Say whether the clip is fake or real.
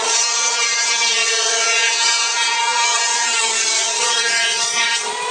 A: fake